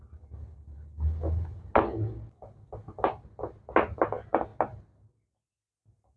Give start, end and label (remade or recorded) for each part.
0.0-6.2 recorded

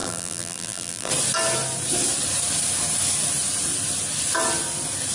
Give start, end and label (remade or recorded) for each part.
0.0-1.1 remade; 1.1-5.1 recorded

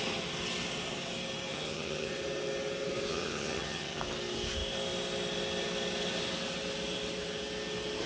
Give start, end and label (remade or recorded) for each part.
0.0-1.5 recorded; 1.5-2.1 remade; 2.1-3.1 recorded; 3.1-4.0 remade; 4.0-8.1 recorded